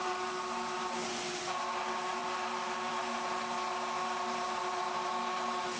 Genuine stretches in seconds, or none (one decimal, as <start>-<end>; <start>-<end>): 0.0-5.8